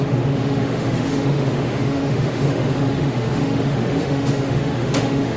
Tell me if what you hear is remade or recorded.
remade